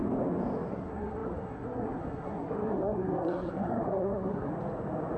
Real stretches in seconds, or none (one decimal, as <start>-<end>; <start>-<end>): 0.0-0.7; 4.5-5.2